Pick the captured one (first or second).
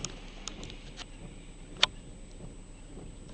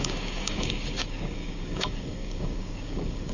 first